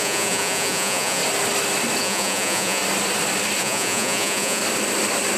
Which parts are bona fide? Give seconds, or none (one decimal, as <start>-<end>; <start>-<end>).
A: 1.2-2.0; 2.8-3.6; 4.6-5.4